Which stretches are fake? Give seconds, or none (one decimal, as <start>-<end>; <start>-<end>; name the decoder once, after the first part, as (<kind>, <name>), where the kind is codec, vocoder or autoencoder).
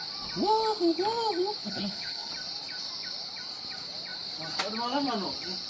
1.6-2.3 (codec, HILCodec)